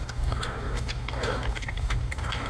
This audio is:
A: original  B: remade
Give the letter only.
B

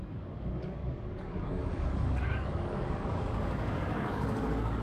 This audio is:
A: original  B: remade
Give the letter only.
B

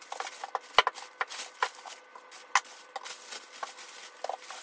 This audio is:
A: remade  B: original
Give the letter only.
B